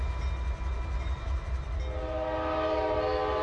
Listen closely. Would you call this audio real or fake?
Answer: real